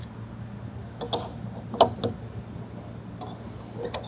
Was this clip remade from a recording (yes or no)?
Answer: no